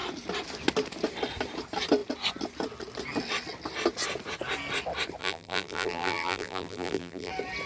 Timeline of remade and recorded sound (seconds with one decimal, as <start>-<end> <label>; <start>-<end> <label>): 0.0-5.2 recorded; 5.2-7.3 remade; 7.3-7.7 recorded